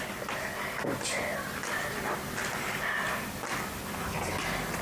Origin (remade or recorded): recorded